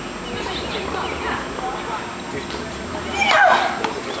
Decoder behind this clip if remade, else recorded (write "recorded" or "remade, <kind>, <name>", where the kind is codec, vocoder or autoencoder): recorded